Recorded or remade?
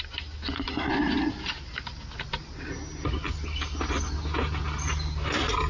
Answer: recorded